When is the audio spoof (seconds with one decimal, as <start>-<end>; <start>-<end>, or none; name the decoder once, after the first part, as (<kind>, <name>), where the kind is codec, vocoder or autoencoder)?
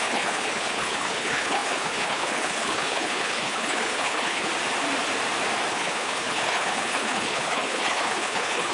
0.0-4.5 (codec, HILCodec); 5.7-8.7